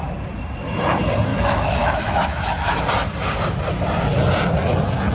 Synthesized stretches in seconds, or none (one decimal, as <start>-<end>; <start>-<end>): 1.3-2.8